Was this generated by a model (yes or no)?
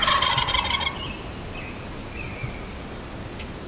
no